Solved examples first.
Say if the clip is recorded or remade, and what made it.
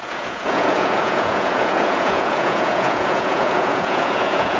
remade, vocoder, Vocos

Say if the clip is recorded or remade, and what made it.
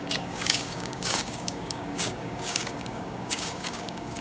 remade, codec, DAC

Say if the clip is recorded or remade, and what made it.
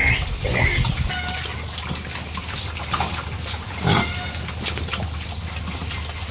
recorded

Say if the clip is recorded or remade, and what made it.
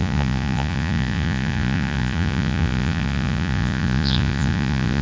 remade, vocoder, Vocos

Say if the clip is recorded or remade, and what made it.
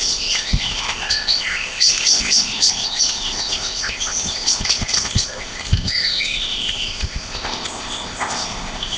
remade, codec, ZipCodec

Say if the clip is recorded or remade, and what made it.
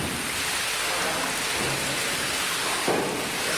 recorded